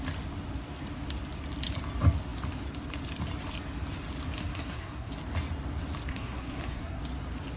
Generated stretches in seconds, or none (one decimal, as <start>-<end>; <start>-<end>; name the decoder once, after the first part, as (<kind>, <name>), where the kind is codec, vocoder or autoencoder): 4.4-5.1 (codec, SNAC); 6.1-7.0